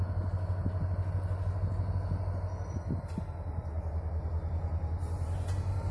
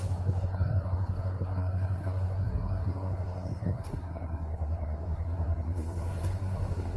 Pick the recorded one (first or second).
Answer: first